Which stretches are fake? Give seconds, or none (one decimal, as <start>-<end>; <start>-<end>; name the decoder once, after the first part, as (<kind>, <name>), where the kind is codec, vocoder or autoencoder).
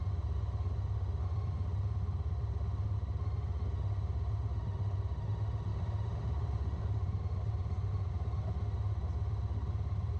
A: 5.7-8.1 (vocoder, BigVGAN v2)